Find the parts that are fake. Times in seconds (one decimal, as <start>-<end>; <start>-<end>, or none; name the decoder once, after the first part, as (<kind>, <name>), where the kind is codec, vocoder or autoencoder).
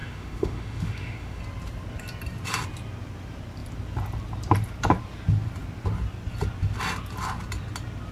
0.0-1.4 (autoencoder, DAC-VAE)